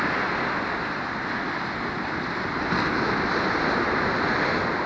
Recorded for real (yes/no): yes